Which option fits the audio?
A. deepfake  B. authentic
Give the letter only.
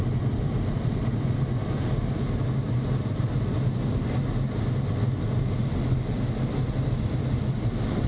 B